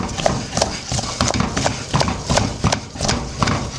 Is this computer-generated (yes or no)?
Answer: no